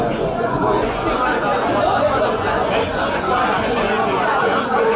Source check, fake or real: fake